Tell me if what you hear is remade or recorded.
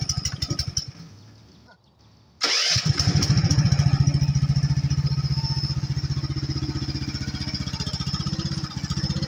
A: recorded